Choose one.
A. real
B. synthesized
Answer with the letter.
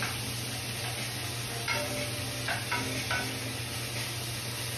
A